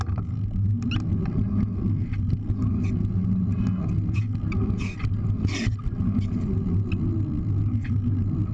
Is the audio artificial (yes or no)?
no